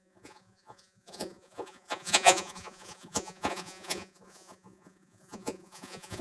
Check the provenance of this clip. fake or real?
fake